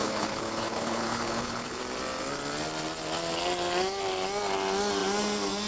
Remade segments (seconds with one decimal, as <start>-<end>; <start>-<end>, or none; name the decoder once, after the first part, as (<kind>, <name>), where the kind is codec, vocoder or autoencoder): 0.0-1.8 (codec, HILCodec)